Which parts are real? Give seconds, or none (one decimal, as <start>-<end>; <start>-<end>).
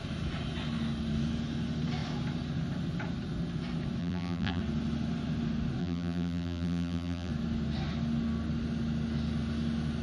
0.0-4.0; 4.6-5.8; 7.3-10.0